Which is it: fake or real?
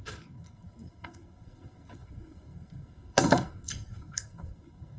fake